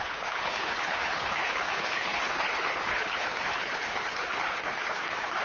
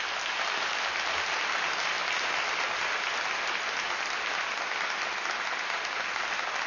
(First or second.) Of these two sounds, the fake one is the first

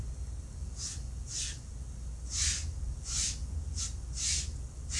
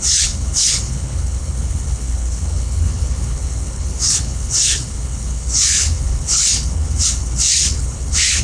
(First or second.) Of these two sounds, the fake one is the second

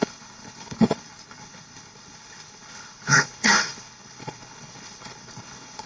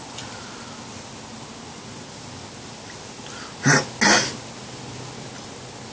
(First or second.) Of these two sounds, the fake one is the first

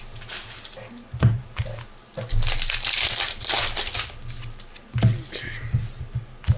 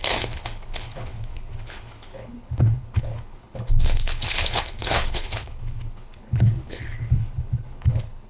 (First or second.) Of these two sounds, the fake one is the second